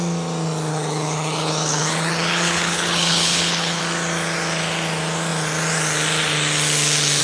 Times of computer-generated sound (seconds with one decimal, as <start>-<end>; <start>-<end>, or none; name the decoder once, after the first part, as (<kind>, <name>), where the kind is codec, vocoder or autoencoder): 0.7-3.8 (codec, HILCodec)